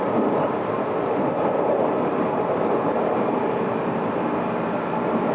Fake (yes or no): yes